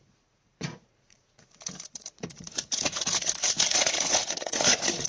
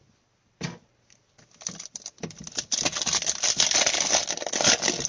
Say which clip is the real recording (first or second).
second